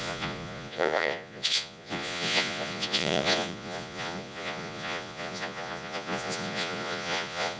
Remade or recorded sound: remade